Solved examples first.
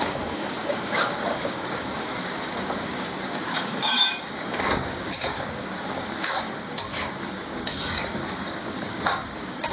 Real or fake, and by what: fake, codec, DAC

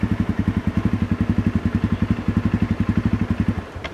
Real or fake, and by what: real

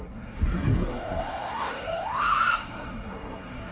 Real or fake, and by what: fake, codec, SNAC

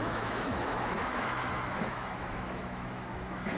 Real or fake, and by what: fake, autoencoder, DAC-VAE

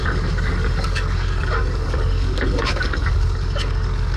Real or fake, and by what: fake, codec, DAC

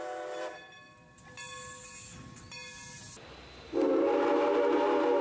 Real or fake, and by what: real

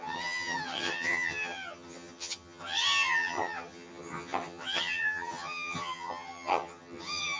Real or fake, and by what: fake, vocoder, HiFi-GAN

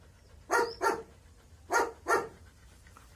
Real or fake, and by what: real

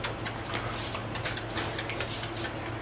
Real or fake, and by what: real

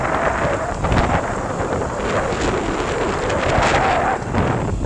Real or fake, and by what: real